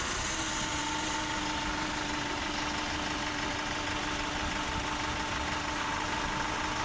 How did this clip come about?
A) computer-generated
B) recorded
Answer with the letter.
B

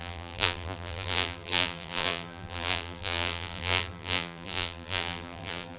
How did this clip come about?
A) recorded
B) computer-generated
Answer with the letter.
B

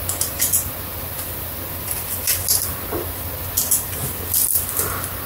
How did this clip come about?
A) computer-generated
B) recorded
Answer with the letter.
B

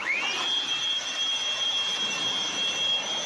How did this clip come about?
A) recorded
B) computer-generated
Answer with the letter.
B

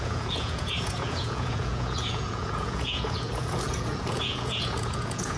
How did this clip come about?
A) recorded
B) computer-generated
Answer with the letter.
B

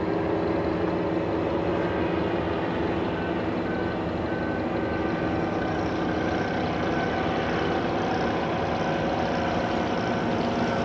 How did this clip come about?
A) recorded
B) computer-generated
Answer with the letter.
A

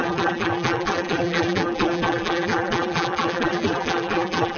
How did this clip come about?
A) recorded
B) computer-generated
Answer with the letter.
B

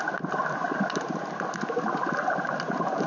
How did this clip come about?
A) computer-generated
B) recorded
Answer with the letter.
B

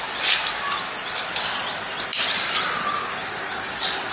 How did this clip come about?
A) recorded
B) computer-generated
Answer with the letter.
A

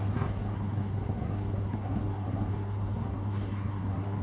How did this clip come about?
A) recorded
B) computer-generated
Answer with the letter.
B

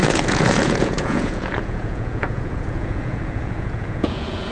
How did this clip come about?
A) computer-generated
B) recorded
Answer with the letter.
A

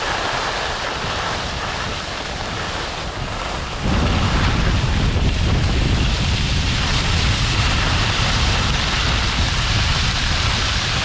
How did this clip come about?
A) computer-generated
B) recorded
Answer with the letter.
B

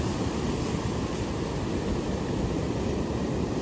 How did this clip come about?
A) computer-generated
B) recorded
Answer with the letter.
B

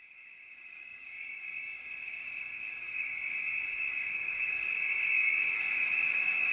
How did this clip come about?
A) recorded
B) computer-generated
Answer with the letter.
B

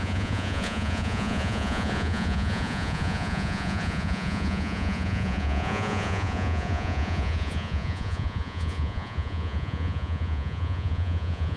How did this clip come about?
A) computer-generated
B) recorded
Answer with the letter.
A